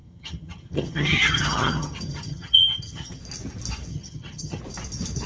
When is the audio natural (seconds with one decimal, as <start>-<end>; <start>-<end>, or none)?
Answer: 3.2-3.9; 4.6-5.3

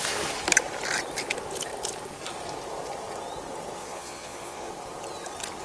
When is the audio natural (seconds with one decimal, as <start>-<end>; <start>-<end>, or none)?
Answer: 0.0-3.8; 4.7-5.6

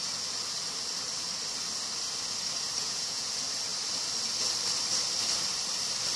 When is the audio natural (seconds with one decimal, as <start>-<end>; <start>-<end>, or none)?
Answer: 0.0-2.8; 3.3-6.2

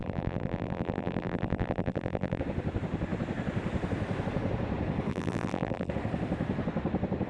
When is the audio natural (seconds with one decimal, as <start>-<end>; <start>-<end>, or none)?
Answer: 2.4-5.1; 5.9-7.3

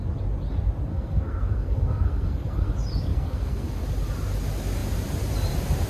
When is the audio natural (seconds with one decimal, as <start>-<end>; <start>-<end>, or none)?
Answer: 0.0-0.9; 2.7-3.1; 3.8-5.9

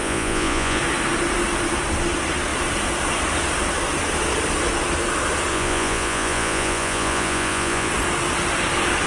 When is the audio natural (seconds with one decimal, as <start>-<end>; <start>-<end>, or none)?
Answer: 0.8-5.5; 7.9-9.1

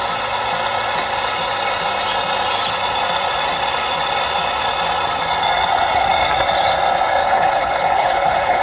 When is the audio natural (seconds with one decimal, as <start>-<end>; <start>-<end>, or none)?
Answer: 0.0-7.2